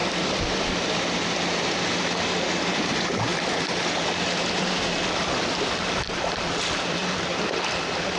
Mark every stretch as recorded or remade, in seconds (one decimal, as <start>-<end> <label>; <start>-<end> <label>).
0.0-1.0 remade; 1.0-3.3 recorded; 3.3-6.6 remade; 6.6-8.2 recorded